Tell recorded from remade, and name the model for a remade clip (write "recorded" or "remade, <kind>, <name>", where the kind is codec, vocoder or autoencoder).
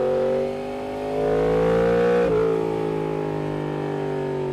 recorded